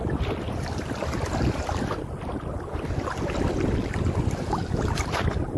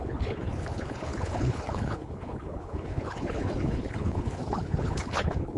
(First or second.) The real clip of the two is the first